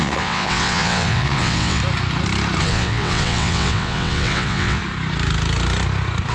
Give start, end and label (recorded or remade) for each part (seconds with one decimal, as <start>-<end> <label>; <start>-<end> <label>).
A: 0.0-1.8 remade; 1.8-2.6 recorded; 2.6-4.8 remade; 4.8-6.3 recorded